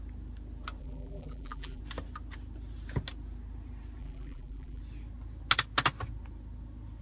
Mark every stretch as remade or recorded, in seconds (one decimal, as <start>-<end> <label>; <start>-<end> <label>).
0.0-0.8 recorded; 0.8-1.8 remade; 1.8-4.0 recorded; 4.0-4.8 remade; 4.8-7.0 recorded